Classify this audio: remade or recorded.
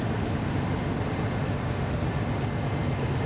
recorded